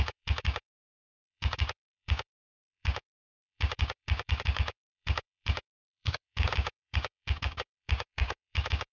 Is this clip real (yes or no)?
no